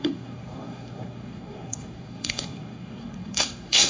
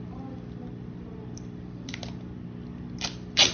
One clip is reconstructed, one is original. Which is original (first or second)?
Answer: second